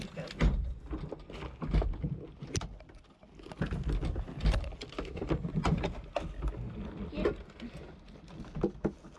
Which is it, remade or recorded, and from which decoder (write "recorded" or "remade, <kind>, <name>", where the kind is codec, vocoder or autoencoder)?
recorded